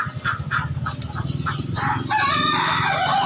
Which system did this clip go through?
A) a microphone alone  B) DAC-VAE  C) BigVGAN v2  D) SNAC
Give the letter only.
A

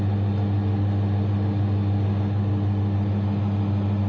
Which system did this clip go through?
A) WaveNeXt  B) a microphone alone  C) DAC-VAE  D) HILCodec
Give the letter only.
B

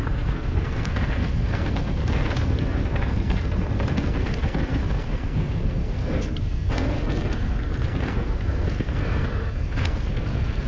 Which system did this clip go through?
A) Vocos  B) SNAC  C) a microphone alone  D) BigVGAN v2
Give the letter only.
B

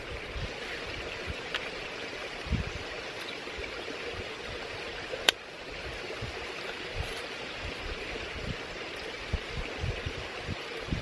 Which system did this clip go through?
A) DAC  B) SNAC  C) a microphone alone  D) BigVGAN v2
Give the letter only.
D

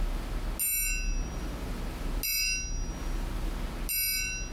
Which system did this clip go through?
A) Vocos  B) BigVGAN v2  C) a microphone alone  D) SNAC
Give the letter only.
C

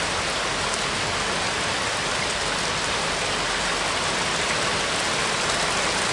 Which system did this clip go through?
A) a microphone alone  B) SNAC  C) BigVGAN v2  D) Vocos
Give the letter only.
A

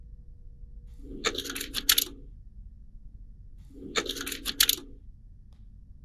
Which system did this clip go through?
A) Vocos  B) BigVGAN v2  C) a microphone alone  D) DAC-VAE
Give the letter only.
C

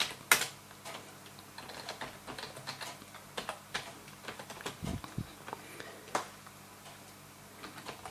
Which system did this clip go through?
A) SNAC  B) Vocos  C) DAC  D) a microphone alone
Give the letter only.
D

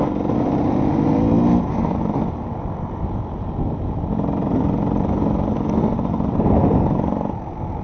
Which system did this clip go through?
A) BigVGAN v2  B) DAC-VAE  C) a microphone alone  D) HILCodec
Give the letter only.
A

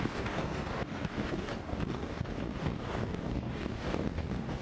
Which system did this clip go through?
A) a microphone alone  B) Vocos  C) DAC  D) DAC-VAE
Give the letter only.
C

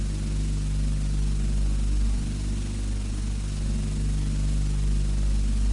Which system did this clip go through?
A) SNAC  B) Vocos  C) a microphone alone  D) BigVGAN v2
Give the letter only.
C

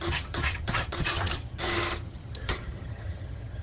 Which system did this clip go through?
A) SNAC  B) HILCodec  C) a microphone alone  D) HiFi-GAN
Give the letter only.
D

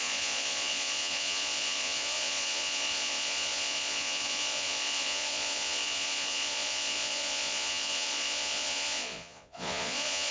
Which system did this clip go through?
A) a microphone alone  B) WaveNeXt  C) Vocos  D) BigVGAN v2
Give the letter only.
C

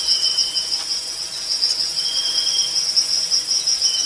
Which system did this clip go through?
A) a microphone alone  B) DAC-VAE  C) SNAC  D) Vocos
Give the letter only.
D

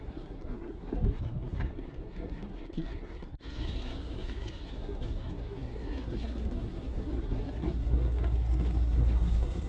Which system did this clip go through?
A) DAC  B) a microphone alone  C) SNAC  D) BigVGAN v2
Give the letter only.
C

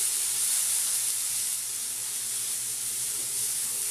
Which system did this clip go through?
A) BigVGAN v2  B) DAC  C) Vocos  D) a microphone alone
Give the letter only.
A